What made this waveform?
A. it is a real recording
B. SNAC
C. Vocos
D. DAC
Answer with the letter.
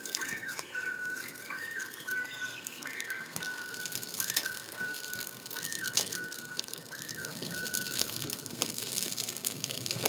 B